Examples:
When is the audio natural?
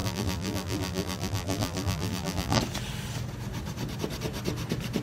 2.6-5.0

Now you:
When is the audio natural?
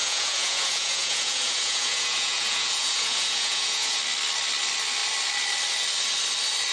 4.0-6.7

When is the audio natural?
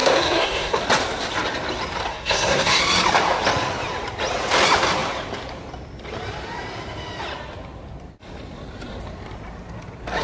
0.8-2.1; 2.8-10.2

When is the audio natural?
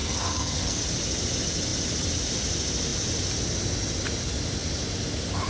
0.8-5.5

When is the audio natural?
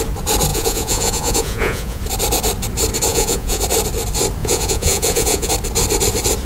0.0-0.5; 2.0-3.1; 3.6-4.4; 5.5-6.4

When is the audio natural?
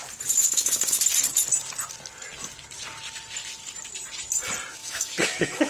0.0-0.4; 1.0-4.8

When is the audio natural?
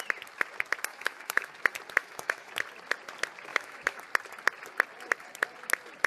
0.0-0.9; 1.5-2.0; 2.5-3.5; 4.0-6.1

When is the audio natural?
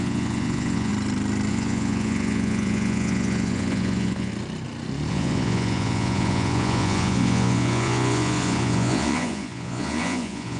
0.9-1.5; 4.3-5.1